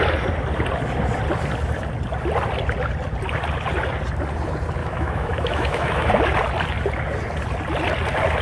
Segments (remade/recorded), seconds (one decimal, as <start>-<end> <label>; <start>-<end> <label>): 0.0-4.8 recorded; 4.8-6.1 remade; 6.1-8.4 recorded